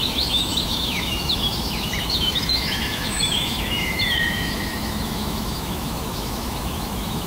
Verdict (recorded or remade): remade